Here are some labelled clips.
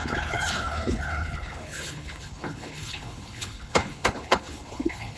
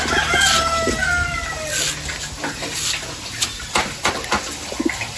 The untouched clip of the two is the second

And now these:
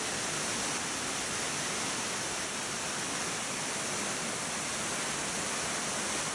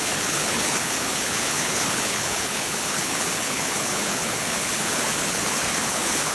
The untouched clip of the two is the first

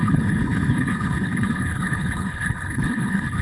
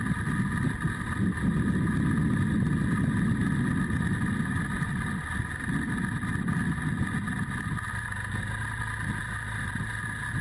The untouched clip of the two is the second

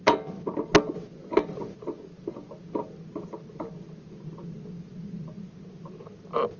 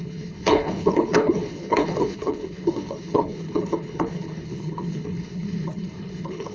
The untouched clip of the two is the first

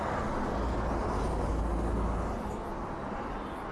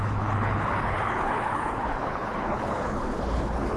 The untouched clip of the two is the first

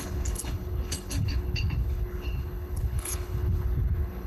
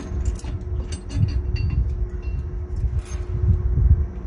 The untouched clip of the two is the second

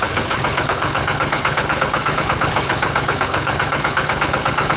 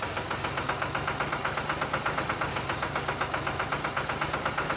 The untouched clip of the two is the second